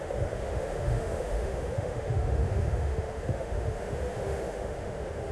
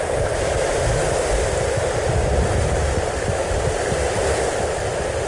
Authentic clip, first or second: second